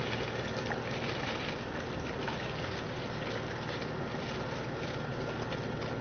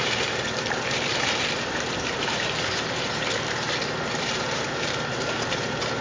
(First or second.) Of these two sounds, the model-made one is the second